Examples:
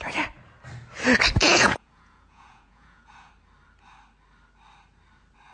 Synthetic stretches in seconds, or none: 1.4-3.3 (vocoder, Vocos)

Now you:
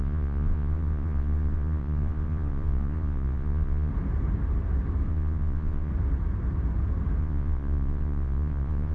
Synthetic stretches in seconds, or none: 0.0-3.9 (vocoder, Vocos); 5.1-5.9; 7.2-8.9

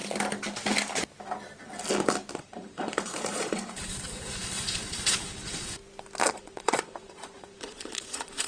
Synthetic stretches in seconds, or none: 2.4-5.8 (vocoder, Vocos); 6.3-8.5

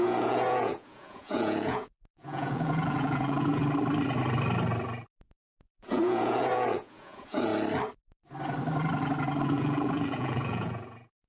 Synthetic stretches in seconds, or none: 0.0-3.6 (vocoder, Vocos); 5.5-7.5; 9.4-11.3